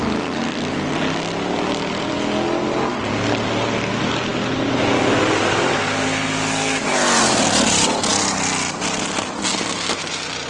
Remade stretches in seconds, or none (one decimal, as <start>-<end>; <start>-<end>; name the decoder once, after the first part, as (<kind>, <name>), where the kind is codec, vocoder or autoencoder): none